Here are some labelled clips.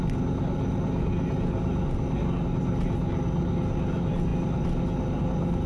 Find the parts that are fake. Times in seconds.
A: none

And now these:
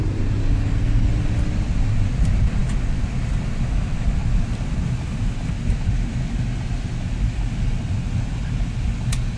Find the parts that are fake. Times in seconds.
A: 0.4-1.1 (codec, SNAC)

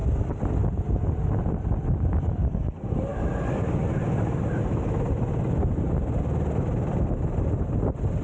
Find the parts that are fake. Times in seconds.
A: none

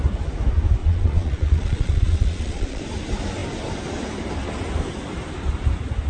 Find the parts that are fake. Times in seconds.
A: 0.8-2.8 (vocoder, Vocos)

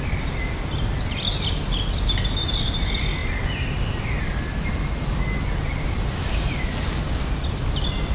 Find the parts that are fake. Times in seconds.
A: none

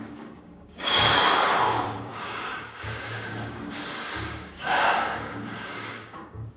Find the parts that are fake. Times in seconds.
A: 0.0-6.6 (codec, DAC)

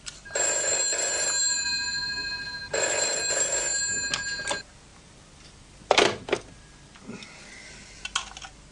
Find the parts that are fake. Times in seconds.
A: 1.4-3.1 (vocoder, BigVGAN v2); 4.9-7.7

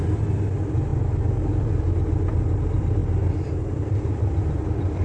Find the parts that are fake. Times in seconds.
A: none